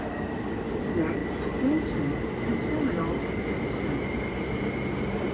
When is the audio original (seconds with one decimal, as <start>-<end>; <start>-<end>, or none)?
0.0-5.3